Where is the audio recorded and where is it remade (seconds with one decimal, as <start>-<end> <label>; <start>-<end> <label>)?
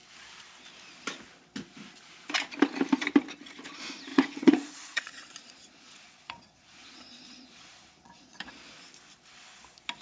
0.0-4.1 recorded; 4.1-8.5 remade; 8.5-10.0 recorded